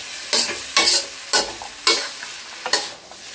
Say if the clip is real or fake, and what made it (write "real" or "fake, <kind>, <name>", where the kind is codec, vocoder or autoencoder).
real